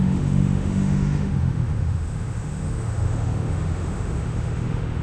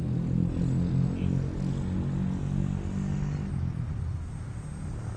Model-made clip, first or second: first